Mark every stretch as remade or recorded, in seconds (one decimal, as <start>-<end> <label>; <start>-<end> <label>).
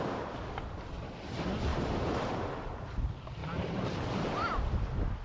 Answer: 0.0-1.7 recorded; 1.7-2.6 remade; 2.6-3.4 recorded; 3.4-4.6 remade; 4.6-5.2 recorded